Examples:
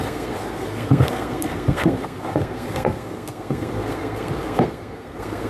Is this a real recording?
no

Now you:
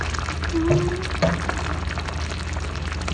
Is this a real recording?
yes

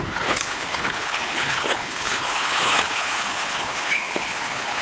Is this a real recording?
no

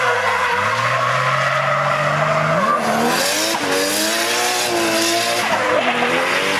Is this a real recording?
yes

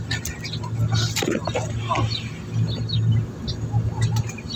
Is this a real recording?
yes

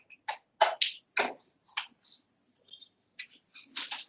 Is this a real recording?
yes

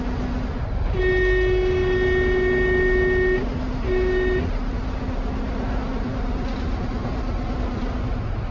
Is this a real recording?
yes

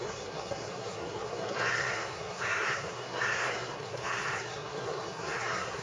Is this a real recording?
no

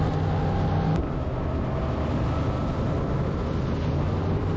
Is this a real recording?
yes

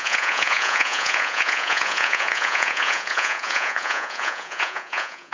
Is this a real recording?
no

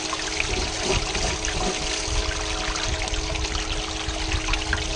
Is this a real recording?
yes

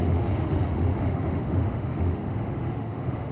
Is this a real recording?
no